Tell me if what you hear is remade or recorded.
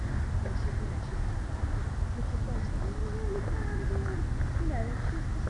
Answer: recorded